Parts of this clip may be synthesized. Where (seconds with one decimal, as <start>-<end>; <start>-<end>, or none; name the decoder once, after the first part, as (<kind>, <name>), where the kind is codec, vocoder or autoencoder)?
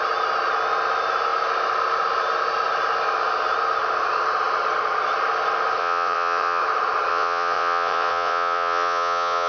5.8-6.6 (vocoder, Vocos); 7.1-9.5